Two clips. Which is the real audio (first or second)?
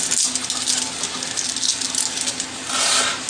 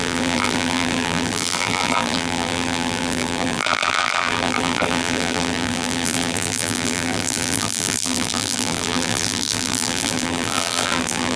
first